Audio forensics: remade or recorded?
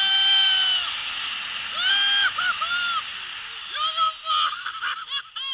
recorded